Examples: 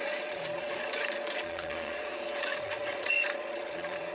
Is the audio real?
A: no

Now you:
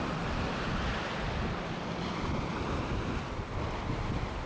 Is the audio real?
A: yes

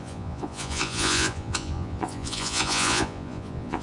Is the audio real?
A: no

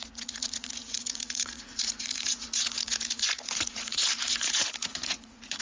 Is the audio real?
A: no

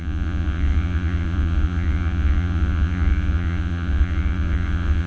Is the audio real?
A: no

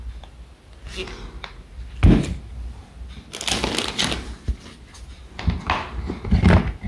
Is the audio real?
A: yes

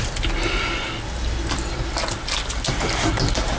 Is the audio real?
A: yes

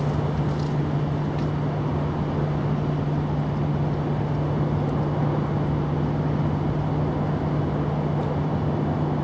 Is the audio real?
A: yes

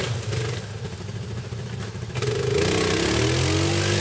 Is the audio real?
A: yes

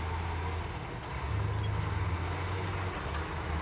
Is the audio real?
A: yes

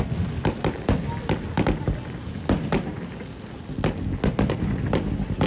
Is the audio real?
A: yes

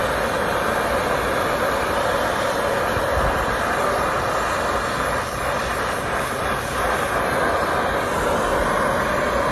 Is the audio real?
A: yes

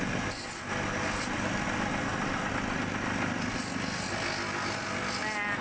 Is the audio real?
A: yes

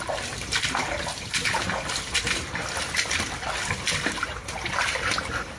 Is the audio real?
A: yes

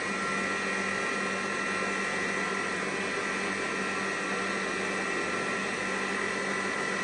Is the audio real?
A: yes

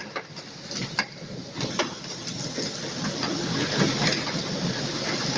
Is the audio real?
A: yes